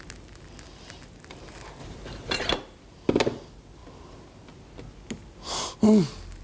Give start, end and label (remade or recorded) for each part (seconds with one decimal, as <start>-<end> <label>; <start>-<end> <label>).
0.0-1.8 recorded; 1.8-2.5 remade; 2.5-6.4 recorded